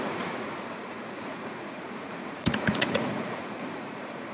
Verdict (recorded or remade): remade